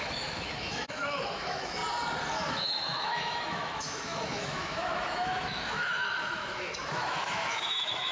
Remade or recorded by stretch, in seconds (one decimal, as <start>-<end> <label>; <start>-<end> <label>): 0.0-1.8 remade; 1.8-2.5 recorded; 2.5-8.1 remade